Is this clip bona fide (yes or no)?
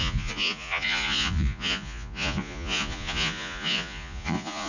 no